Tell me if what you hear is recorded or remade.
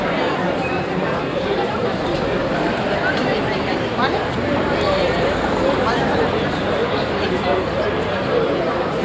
remade